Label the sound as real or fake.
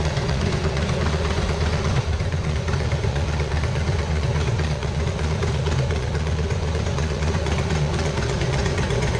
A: fake